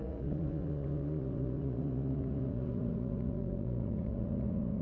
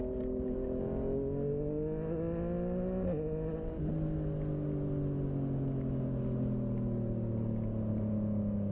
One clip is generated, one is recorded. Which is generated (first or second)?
first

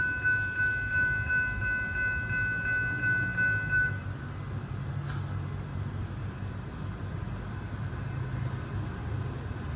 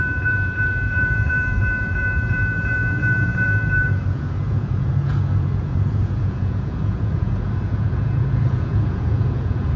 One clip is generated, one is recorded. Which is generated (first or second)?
second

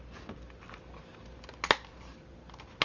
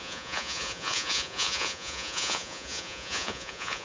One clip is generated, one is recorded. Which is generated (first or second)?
second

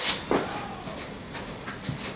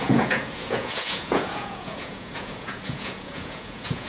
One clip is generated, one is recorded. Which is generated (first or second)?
second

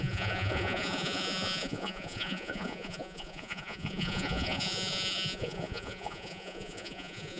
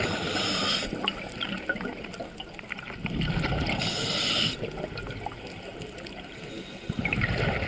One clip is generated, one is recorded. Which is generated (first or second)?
first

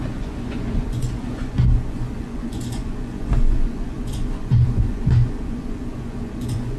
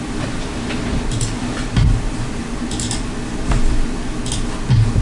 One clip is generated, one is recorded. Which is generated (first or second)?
first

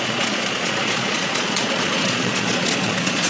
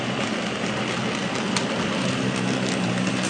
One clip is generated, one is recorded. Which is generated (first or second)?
first